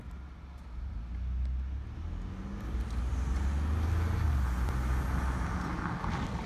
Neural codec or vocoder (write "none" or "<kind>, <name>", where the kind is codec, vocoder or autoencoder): none